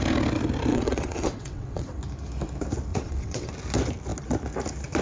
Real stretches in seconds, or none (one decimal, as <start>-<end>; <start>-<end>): 0.0-0.7; 2.0-2.9; 3.5-5.0